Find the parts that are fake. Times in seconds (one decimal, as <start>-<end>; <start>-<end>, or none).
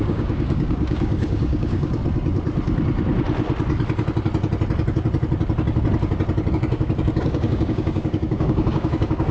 0.0-2.0; 6.5-9.3